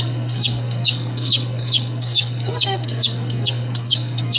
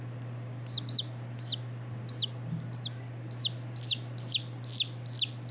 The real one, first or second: second